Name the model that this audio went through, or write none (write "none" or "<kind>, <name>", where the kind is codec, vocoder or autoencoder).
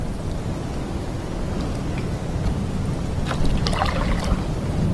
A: none